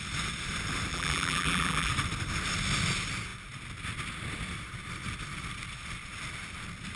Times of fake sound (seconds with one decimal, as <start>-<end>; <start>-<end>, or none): 0.9-1.9